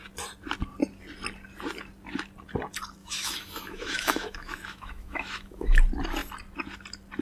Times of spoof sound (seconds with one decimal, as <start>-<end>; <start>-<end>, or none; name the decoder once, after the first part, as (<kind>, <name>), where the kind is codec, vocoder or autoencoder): 3.0-5.8 (autoencoder, DAC-VAE)

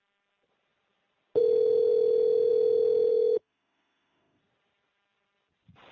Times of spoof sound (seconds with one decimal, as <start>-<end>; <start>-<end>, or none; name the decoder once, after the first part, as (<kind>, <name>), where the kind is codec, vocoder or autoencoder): 3.1-4.4 (autoencoder, DAC-VAE)